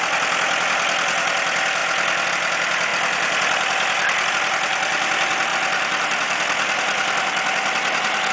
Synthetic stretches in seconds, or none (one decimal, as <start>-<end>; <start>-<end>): 5.5-8.3